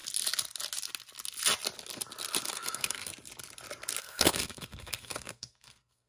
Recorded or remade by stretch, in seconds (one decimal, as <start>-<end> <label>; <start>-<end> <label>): 0.0-2.5 recorded; 2.5-3.1 remade; 3.1-4.0 recorded; 4.0-6.1 remade